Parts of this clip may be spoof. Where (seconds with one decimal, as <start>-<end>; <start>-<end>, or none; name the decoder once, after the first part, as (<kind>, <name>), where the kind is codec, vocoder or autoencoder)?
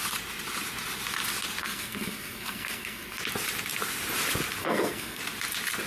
1.6-3.2 (codec, SNAC); 4.6-5.2